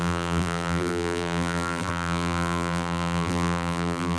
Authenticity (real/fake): fake